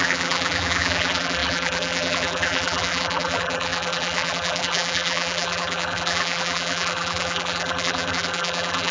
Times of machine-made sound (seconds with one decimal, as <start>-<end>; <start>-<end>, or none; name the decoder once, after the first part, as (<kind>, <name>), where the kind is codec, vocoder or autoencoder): 0.0-8.9 (vocoder, BigVGAN v2)